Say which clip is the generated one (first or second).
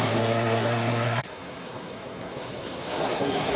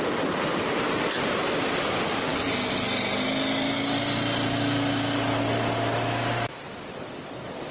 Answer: first